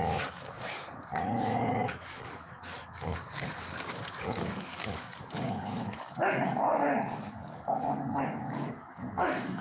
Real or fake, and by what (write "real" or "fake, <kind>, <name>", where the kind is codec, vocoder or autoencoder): fake, codec, DAC